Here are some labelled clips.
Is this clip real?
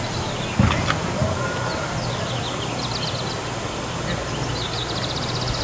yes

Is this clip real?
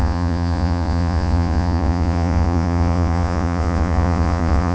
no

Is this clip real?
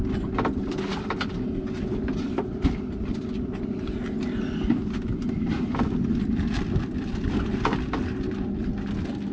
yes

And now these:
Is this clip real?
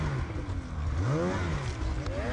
yes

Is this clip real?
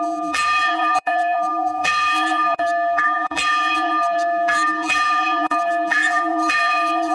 no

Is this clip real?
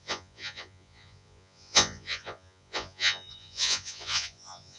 no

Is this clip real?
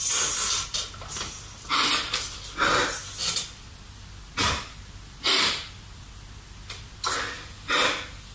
yes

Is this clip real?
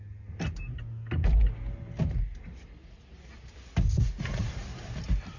yes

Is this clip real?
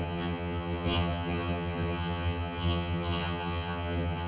no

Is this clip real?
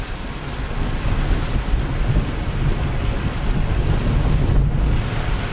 yes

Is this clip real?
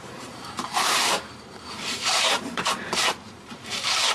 no